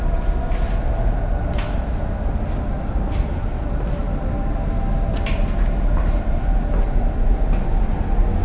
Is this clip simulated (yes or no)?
no